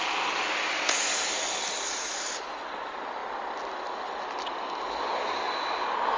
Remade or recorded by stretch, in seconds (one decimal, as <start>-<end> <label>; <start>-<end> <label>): 0.0-6.2 recorded